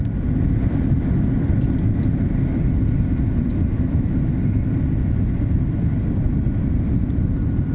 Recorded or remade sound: recorded